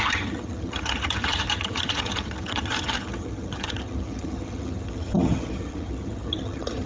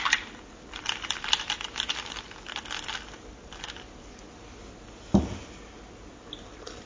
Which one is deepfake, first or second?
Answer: first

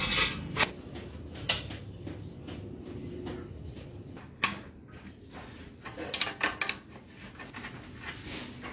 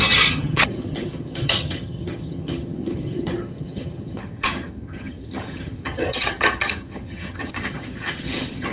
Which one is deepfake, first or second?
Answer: second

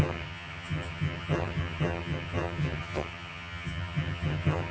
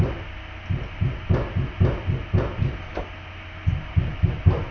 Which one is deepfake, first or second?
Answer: first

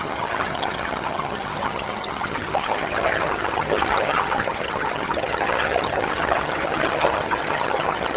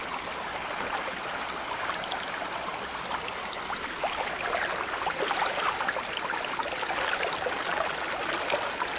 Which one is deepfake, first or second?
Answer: first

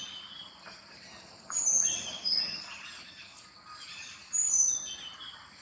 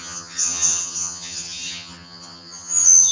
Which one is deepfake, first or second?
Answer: second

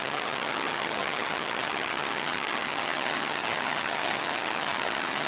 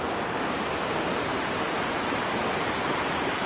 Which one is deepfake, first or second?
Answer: first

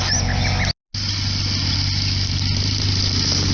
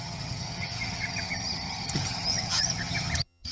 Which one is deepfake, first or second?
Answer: second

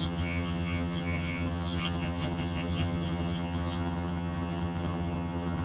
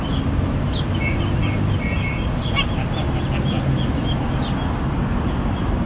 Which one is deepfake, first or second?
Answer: first